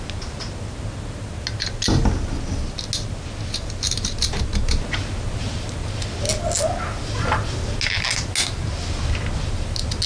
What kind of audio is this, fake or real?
real